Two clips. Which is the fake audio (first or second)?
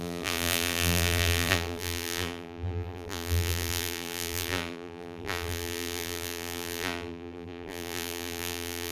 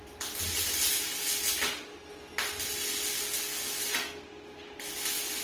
first